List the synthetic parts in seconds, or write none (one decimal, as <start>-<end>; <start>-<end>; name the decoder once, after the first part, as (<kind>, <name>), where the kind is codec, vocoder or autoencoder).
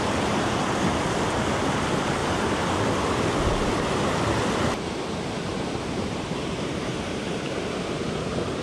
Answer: 2.2-2.8 (vocoder, BigVGAN v2); 5.5-7.6